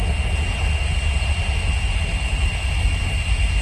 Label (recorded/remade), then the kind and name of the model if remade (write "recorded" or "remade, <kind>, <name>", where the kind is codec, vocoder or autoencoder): recorded